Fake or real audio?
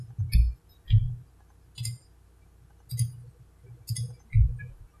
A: real